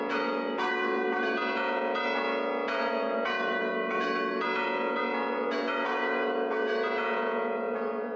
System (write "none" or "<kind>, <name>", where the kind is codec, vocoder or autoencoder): vocoder, Vocos